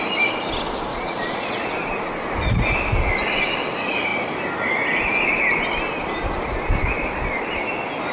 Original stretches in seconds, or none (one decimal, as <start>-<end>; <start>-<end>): 0.0-0.9; 1.7-8.1